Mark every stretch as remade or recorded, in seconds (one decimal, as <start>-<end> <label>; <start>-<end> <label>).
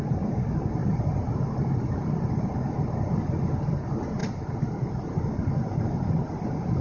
0.0-6.8 recorded